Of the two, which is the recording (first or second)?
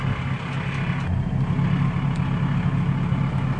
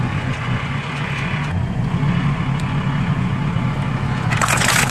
first